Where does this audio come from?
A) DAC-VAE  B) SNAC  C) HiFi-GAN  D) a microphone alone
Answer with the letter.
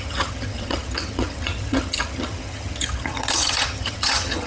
C